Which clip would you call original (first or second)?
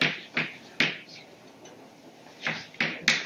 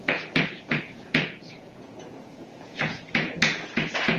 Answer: first